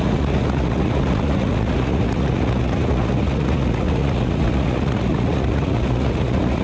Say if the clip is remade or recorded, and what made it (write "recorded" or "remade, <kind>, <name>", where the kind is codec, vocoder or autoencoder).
remade, vocoder, Vocos